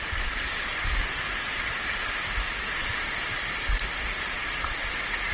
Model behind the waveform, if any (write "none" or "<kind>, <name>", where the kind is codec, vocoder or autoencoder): vocoder, BigVGAN v2